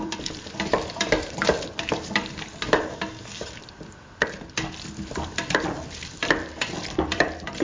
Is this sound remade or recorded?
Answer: remade